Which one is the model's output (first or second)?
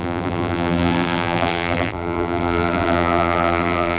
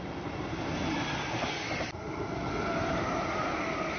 first